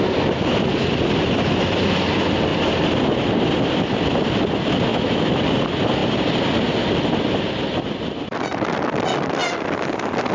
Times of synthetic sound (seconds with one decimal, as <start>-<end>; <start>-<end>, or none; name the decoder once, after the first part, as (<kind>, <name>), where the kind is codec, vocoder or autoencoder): 4.9-5.4 (autoencoder, DAC-VAE)